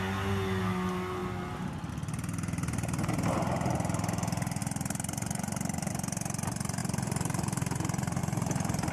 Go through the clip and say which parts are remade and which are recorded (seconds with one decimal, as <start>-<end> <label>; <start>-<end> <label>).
0.0-8.9 recorded